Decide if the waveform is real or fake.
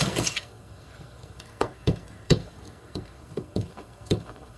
fake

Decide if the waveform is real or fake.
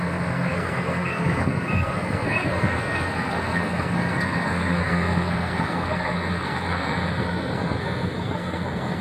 fake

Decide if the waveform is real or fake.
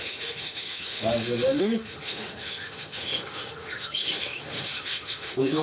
fake